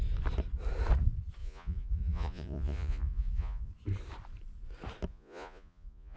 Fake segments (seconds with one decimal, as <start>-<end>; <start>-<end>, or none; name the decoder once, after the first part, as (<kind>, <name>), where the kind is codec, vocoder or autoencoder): 1.4-3.7 (vocoder, Vocos); 5.1-6.2